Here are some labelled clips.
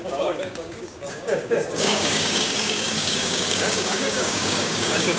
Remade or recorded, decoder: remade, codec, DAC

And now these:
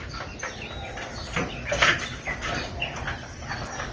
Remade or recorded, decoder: recorded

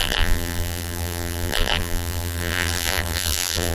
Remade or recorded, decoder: remade, vocoder, BigVGAN v2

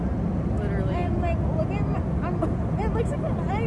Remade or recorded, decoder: recorded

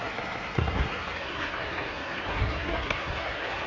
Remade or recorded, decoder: remade, codec, SNAC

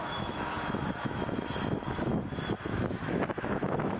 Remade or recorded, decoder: remade, autoencoder, DAC-VAE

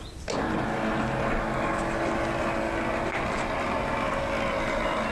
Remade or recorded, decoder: recorded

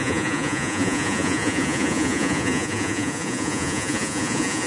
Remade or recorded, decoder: remade, vocoder, Vocos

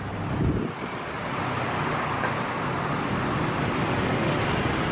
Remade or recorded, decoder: recorded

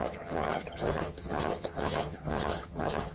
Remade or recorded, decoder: remade, vocoder, HiFi-GAN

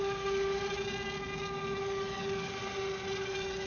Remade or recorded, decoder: recorded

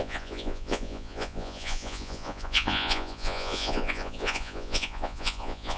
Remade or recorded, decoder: remade, vocoder, Vocos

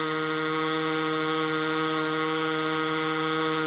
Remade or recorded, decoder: remade, autoencoder, DAC-VAE